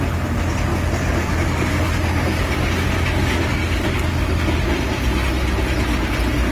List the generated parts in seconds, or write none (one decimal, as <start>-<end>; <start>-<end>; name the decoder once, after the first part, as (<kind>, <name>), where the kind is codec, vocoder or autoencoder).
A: 0.7-4.6 (codec, DAC)